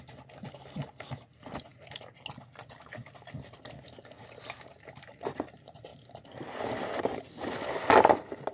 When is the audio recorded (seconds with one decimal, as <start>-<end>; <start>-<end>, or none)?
0.0-8.5